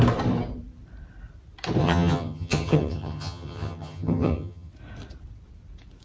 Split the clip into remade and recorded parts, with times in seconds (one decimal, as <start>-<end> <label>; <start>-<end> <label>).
0.0-1.8 recorded; 1.8-4.7 remade; 4.7-6.0 recorded